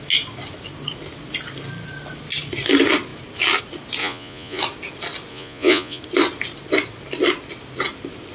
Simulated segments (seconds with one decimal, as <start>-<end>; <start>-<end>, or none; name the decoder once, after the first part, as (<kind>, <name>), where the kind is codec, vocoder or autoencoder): 4.0-4.6 (vocoder, Vocos); 5.3-6.0